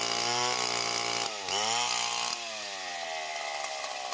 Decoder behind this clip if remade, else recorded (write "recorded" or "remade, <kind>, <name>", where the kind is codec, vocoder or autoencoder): recorded